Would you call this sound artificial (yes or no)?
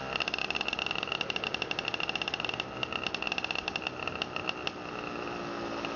no